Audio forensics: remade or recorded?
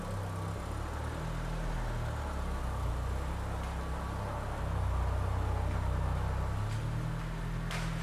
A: recorded